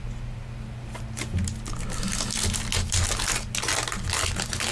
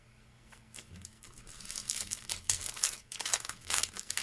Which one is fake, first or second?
second